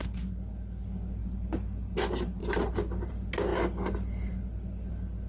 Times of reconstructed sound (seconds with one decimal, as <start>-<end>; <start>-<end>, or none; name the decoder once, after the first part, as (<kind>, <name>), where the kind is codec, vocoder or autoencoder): none